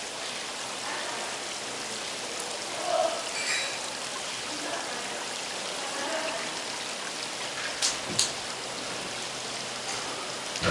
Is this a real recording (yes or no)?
yes